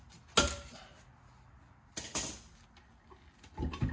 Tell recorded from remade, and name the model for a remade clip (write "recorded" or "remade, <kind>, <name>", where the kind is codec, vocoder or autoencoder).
recorded